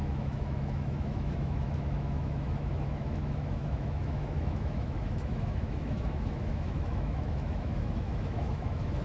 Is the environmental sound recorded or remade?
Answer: remade